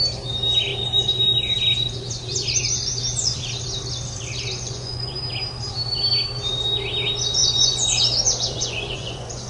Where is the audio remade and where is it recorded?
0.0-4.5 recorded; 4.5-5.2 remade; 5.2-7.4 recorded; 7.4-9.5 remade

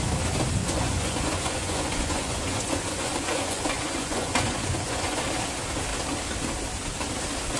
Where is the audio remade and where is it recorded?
0.0-0.6 recorded; 0.6-5.2 remade; 5.2-7.6 recorded

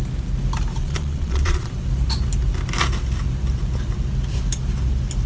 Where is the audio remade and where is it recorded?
0.0-0.8 recorded; 0.8-1.7 remade; 1.7-5.3 recorded

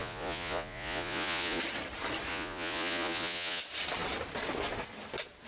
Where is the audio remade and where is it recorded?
0.0-1.6 remade; 1.6-2.3 recorded; 2.3-3.6 remade; 3.6-5.5 recorded